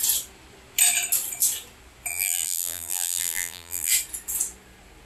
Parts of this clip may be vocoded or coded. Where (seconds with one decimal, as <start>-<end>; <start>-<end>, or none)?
2.1-3.9